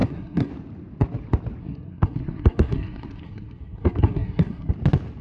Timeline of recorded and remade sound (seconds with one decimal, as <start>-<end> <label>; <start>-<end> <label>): 0.0-0.5 remade; 0.5-1.6 recorded; 1.6-4.7 remade; 4.7-5.2 recorded